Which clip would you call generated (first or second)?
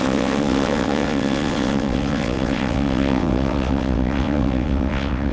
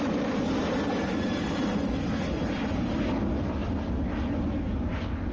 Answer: first